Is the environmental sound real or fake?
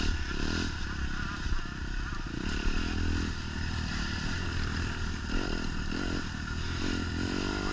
fake